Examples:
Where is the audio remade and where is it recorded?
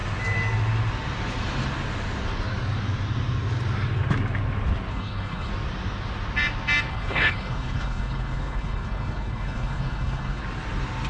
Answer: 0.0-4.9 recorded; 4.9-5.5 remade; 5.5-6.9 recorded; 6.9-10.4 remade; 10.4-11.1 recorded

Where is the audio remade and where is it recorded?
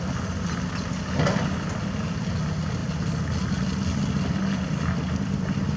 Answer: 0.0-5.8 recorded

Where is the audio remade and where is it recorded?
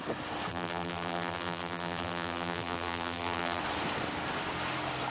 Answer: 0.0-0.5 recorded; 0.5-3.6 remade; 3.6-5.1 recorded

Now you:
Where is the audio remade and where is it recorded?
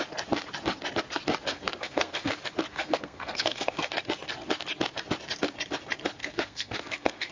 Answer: 0.0-1.5 recorded; 1.5-2.3 remade; 2.3-2.7 recorded; 2.7-3.9 remade; 3.9-6.2 recorded; 6.2-7.3 remade